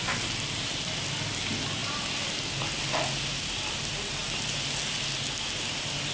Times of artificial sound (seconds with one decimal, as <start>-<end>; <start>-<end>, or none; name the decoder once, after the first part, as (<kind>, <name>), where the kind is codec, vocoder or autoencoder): none

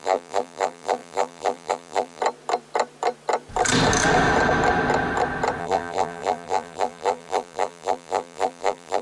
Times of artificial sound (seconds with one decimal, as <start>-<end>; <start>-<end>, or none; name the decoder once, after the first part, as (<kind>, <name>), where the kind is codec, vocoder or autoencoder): 0.0-2.2 (vocoder, BigVGAN v2); 5.6-9.0